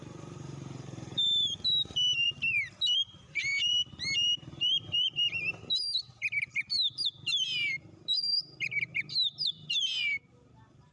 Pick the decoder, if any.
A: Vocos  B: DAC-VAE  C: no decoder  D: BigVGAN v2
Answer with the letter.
D